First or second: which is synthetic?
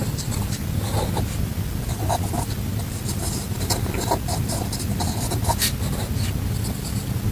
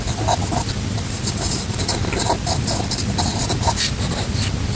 second